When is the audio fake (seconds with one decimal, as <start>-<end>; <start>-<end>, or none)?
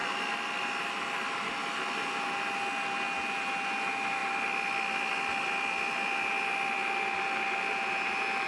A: 0.0-0.6; 4.2-6.2